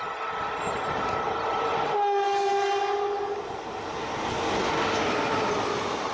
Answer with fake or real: real